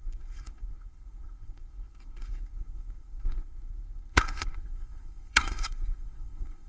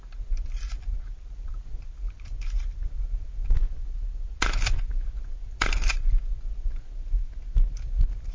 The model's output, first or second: first